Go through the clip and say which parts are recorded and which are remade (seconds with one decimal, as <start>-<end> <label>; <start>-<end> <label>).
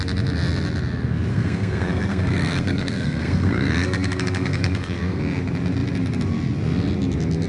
0.0-1.3 recorded; 1.3-5.2 remade; 5.2-7.5 recorded